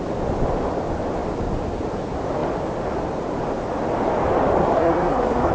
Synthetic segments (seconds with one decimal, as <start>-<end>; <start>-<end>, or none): 4.6-5.5